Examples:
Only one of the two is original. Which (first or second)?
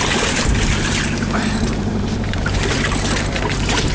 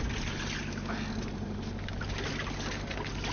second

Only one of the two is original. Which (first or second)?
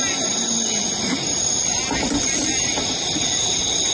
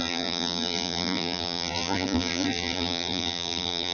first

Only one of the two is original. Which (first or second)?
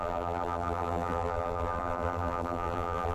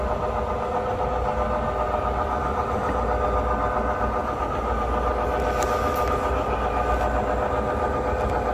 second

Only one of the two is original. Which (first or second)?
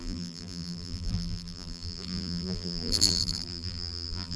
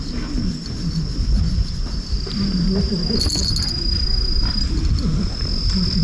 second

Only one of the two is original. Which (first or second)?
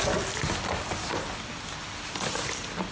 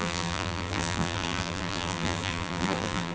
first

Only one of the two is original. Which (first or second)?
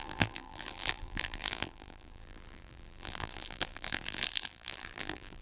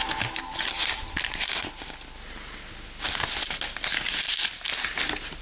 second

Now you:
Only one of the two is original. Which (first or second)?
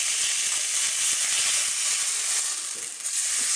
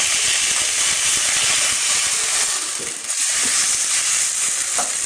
first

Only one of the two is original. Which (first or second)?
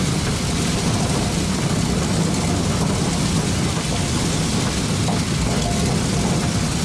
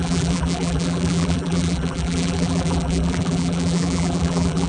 first